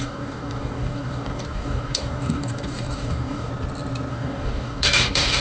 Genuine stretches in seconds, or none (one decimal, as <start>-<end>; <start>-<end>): 3.5-4.1